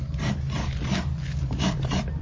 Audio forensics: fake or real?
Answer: real